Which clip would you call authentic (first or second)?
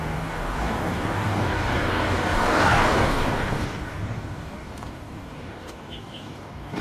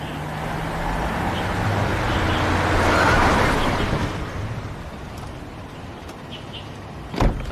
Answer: second